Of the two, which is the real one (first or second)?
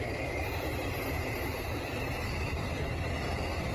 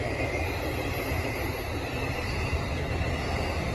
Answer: second